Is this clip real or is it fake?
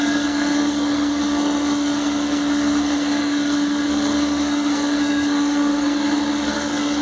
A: fake